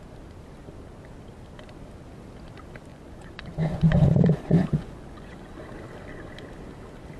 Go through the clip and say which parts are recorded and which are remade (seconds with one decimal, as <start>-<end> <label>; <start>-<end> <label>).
0.0-2.9 recorded; 2.9-5.5 remade; 5.5-7.2 recorded